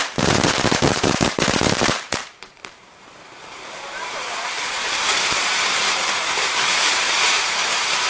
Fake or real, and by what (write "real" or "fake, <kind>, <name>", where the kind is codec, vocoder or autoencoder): fake, vocoder, BigVGAN v2